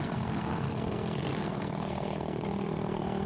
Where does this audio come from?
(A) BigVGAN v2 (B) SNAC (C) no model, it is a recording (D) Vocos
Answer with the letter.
B